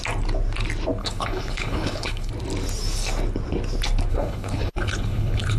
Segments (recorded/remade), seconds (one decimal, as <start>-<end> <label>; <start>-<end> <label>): 0.0-1.0 recorded; 1.0-2.3 remade; 2.3-4.1 recorded; 4.1-5.6 remade